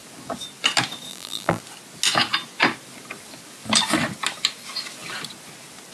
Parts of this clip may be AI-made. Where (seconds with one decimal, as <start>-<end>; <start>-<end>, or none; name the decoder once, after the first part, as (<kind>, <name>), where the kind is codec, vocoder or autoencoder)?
1.1-1.6 (vocoder, BigVGAN v2)